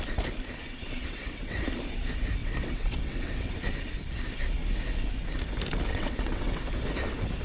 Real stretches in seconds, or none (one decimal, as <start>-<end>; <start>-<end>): 0.0-1.0; 1.6-2.4; 3.5-5.9; 6.6-7.4